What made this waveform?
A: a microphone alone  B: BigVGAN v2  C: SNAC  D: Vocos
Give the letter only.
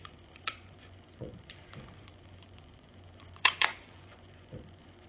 D